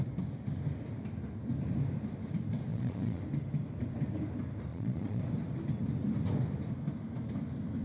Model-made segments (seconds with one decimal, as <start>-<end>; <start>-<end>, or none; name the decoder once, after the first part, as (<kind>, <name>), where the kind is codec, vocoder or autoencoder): 2.7-3.2 (vocoder, Vocos); 4.7-5.2